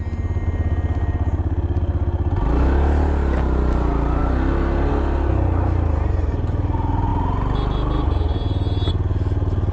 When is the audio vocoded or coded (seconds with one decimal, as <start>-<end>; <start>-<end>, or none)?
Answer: none